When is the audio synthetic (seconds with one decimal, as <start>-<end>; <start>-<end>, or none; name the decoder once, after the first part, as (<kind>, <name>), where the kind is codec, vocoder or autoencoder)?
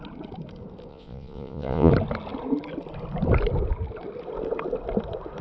0.9-1.9 (vocoder, Vocos)